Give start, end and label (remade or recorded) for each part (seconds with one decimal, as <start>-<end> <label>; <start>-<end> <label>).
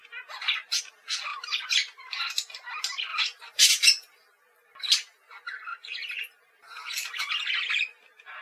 0.0-1.3 recorded; 1.3-2.7 remade; 2.7-3.1 recorded; 3.1-3.7 remade; 3.7-5.7 recorded; 5.7-7.3 remade; 7.3-8.4 recorded